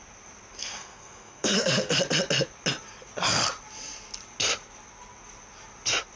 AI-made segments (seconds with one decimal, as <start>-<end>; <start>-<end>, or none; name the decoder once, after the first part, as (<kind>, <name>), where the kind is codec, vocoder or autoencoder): 0.6-2.0 (codec, SNAC)